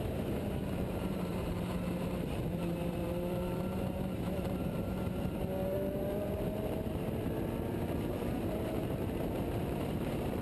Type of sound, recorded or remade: remade